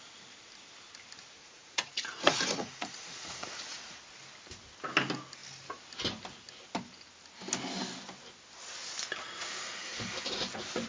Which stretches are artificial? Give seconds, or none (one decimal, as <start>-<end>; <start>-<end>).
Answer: 1.4-4.0